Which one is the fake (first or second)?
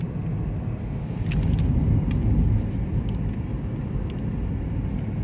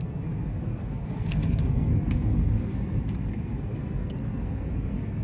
second